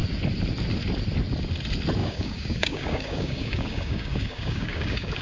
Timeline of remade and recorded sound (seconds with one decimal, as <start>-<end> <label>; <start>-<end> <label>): 0.0-2.0 recorded; 2.0-5.2 remade